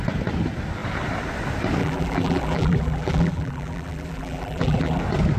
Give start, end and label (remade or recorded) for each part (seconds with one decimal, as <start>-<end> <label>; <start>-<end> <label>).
0.0-1.8 recorded; 1.8-5.0 remade; 5.0-5.4 recorded